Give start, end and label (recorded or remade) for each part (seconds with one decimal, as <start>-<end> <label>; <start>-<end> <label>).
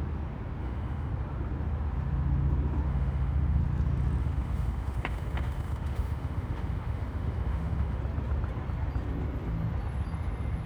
0.0-0.6 recorded; 0.6-1.1 remade; 1.1-2.9 recorded; 2.9-3.6 remade; 3.6-4.2 recorded; 4.2-8.0 remade; 8.0-10.7 recorded